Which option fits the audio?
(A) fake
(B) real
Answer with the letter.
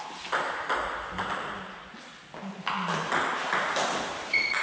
B